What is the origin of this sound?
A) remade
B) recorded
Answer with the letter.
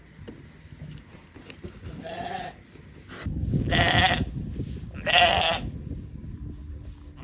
B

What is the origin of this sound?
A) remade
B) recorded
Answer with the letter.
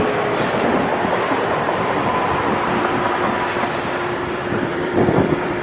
A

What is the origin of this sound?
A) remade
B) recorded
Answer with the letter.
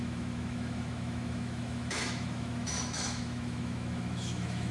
A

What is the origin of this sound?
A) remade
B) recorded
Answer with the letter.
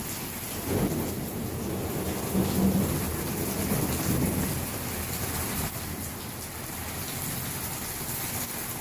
B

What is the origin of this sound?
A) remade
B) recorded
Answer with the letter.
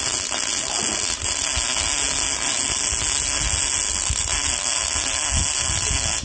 B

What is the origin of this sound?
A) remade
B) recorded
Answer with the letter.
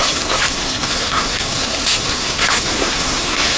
A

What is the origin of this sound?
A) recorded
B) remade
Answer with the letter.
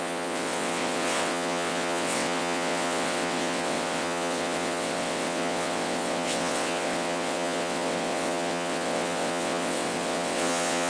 B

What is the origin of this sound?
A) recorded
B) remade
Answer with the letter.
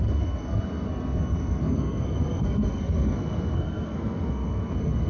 B